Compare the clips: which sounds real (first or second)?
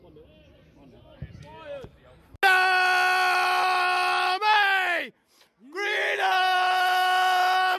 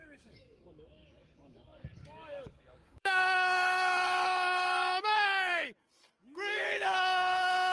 first